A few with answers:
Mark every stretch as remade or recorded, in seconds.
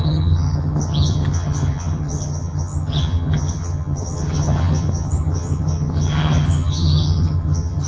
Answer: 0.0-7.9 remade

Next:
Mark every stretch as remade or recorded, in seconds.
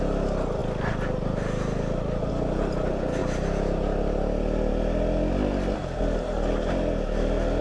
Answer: 0.0-7.6 recorded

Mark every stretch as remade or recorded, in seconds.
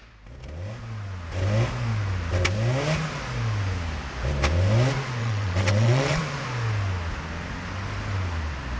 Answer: 0.0-5.2 recorded; 5.2-6.2 remade; 6.2-8.8 recorded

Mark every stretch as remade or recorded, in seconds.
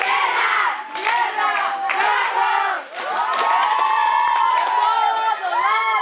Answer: 0.0-6.0 recorded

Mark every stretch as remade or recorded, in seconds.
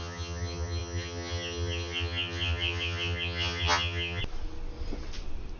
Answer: 0.0-4.2 remade; 4.2-5.6 recorded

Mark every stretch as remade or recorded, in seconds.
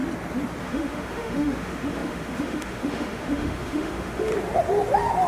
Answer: 0.0-0.6 recorded; 0.6-4.3 remade; 4.3-5.3 recorded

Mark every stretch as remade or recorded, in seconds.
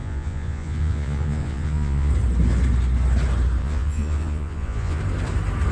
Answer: 0.0-2.1 remade; 2.1-3.6 recorded; 3.6-5.0 remade; 5.0-5.7 recorded